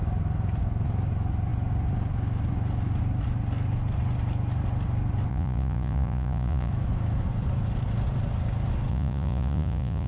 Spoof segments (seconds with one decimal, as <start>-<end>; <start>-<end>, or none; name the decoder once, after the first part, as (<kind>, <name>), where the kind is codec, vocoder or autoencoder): 5.3-6.7 (vocoder, Vocos); 8.9-10.1